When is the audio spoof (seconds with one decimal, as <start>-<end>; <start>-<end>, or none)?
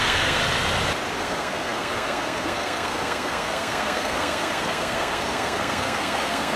0.0-0.4; 1.2-6.6